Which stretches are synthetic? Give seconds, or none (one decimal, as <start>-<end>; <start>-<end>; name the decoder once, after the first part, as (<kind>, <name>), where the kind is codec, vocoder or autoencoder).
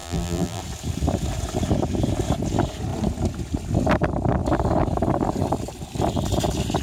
0.0-0.6 (vocoder, BigVGAN v2)